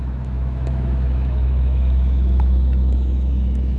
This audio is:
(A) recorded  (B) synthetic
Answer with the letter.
B